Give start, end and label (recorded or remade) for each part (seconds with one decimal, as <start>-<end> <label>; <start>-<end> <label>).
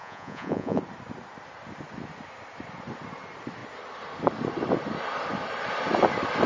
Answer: 0.0-0.8 remade; 0.8-6.5 recorded